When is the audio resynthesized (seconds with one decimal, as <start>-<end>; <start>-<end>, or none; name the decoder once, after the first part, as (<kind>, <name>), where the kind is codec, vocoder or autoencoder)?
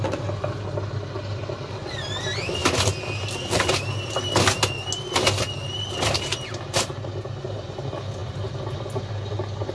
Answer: 8.2-9.1 (vocoder, BigVGAN v2)